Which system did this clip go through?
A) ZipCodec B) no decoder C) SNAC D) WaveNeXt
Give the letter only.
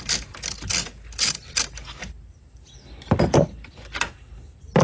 B